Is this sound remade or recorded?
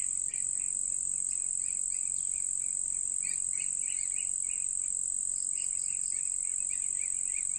recorded